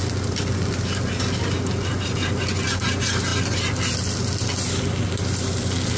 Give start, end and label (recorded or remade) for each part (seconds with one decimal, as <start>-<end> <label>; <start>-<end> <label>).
0.0-6.0 recorded